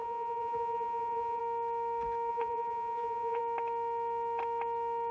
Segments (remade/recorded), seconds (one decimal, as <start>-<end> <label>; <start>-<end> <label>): 0.0-1.4 remade; 1.4-2.3 recorded; 2.3-3.4 remade; 3.4-5.1 recorded